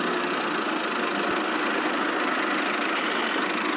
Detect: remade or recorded recorded